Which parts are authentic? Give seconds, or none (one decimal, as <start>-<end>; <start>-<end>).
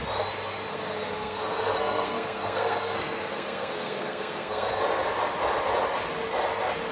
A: 0.0-0.7; 4.8-6.9